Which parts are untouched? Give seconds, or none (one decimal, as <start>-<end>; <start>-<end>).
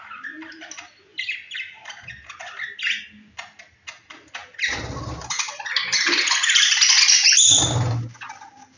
0.0-8.8